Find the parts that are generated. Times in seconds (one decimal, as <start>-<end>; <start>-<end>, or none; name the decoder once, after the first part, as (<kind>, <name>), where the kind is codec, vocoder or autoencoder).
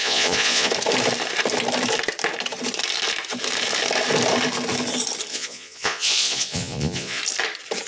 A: 0.0-0.7 (vocoder, Vocos); 5.3-7.2